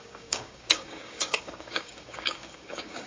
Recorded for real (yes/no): no